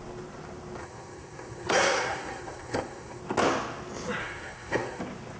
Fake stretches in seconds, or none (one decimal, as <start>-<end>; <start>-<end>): 0.8-3.2; 4.2-5.0